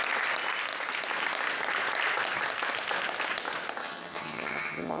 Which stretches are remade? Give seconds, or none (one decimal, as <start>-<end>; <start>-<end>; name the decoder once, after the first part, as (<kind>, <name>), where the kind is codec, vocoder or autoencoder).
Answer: 3.8-5.0 (vocoder, HiFi-GAN)